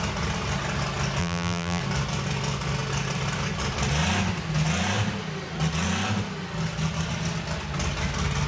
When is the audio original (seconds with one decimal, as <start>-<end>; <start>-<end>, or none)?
0.0-1.2; 1.8-8.5